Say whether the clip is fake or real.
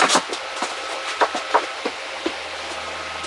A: real